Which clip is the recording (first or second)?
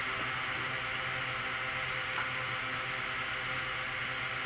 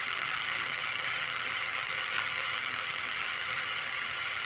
first